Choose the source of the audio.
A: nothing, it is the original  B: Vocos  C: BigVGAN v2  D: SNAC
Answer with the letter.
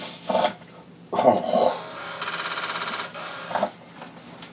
A